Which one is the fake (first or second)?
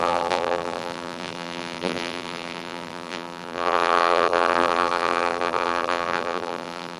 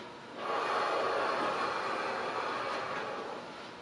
first